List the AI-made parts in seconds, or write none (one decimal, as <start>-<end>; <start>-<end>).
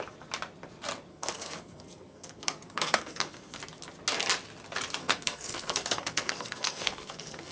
1.1-3.6; 5.0-7.5